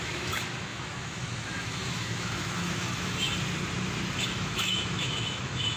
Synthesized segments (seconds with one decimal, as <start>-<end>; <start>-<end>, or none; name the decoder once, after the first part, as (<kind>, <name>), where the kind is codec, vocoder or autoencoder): 0.0-3.3 (autoencoder, DAC-VAE); 4.2-5.8